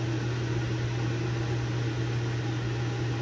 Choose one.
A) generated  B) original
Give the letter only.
B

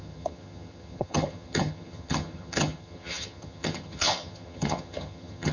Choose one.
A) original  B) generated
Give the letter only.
B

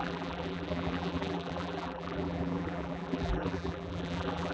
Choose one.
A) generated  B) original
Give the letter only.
A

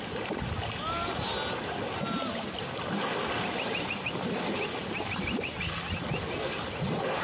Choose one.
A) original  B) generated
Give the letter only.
A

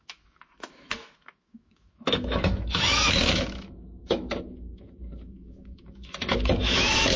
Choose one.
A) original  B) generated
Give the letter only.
B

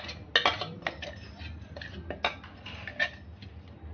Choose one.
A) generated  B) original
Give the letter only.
B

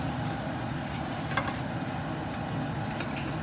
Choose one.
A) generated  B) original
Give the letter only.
B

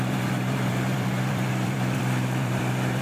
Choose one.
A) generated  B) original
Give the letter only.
A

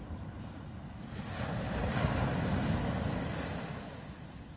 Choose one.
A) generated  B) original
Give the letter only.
B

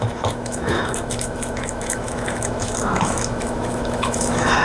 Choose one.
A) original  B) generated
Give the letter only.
B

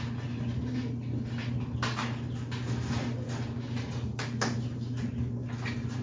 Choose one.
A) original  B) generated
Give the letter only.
A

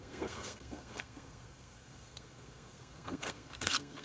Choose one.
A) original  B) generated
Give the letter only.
B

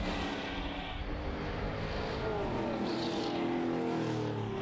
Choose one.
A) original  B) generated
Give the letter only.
A